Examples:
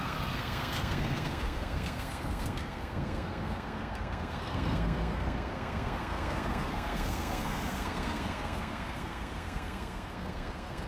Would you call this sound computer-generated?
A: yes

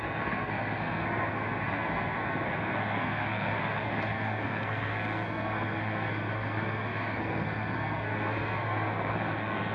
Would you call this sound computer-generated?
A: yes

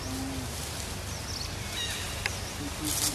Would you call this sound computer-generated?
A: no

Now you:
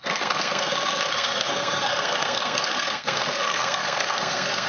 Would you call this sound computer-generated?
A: yes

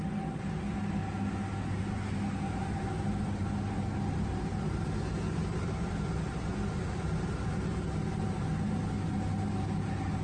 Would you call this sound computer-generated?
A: no